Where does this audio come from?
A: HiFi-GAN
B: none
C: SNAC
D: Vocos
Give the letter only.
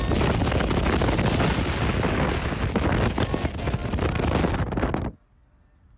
B